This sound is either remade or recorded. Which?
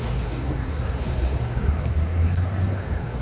remade